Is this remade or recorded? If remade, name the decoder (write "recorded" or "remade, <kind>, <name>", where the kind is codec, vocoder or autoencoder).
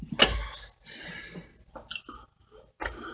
recorded